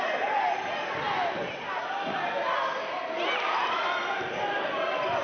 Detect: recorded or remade recorded